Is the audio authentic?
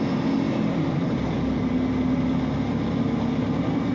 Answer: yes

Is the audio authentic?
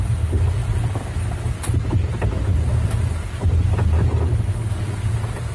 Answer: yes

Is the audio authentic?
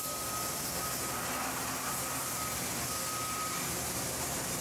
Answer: yes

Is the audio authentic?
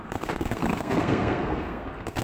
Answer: no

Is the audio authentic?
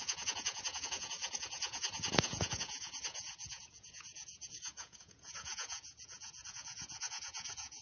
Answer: no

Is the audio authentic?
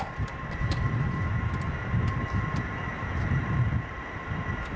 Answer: no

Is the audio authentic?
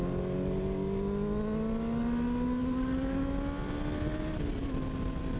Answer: yes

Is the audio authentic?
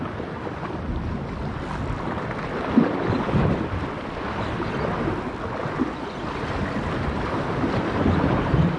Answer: yes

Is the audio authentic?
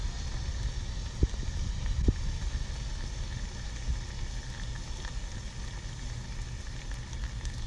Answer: yes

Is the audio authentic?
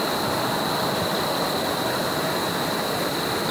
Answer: yes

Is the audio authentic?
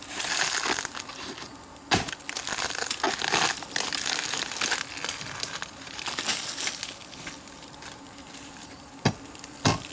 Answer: yes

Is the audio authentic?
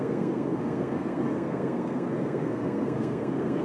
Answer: no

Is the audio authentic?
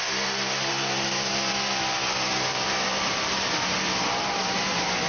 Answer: no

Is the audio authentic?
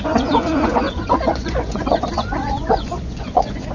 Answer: no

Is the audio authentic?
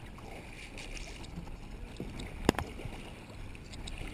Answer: yes